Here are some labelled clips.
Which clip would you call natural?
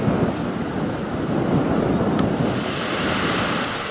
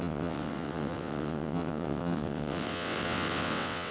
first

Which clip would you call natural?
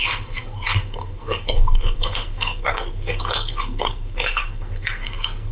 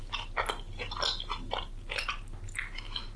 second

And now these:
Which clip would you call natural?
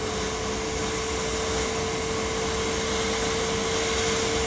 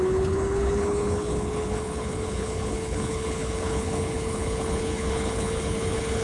first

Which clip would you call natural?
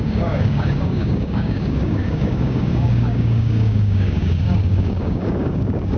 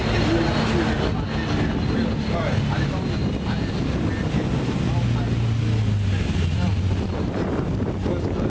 second